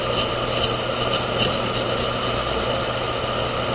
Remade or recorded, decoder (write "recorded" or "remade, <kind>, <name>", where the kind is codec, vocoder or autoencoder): recorded